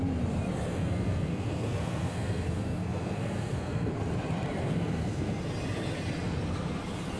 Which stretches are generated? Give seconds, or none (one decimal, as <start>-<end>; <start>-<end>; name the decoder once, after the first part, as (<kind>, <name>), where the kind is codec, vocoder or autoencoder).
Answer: 0.7-3.9 (codec, SNAC); 4.6-5.4